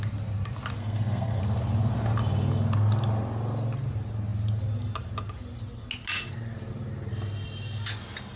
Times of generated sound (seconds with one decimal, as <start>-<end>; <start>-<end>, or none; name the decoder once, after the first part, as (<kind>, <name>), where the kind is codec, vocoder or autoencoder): 0.8-1.4 (codec, SNAC)